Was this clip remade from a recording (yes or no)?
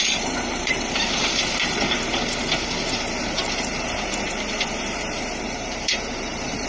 yes